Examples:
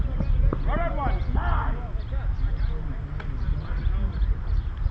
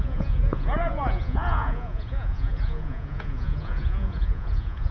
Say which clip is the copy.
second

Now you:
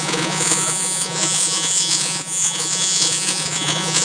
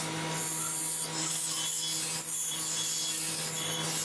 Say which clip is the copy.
first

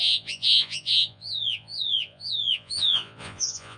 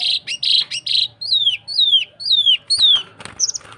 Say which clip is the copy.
first